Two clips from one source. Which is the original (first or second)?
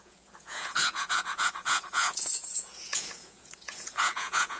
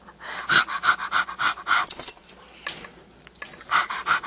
second